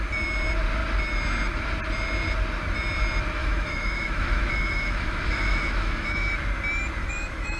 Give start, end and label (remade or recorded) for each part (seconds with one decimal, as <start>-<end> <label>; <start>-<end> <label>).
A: 0.0-3.4 recorded; 3.4-6.3 remade; 6.3-7.0 recorded; 7.0-7.6 remade